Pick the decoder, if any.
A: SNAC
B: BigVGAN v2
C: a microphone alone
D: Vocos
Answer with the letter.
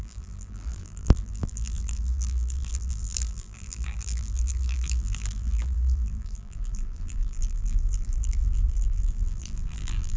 B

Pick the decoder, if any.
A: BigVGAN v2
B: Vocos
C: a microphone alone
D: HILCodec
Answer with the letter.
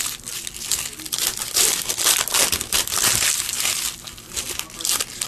C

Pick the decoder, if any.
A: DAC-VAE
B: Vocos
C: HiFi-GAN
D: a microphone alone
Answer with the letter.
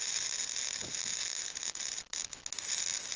D